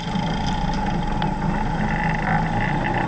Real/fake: real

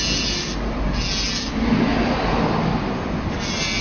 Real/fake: real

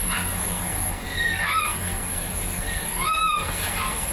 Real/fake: fake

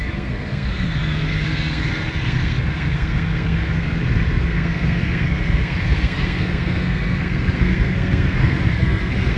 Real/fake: fake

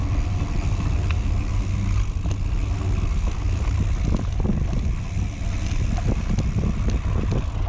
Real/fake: real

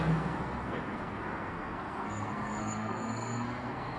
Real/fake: fake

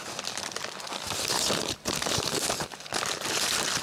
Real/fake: real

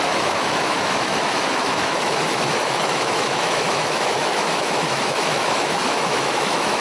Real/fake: fake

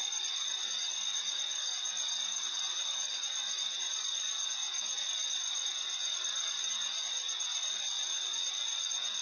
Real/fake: fake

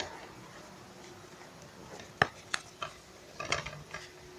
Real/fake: real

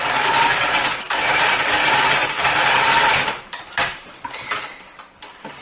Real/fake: fake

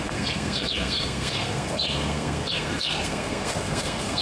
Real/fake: fake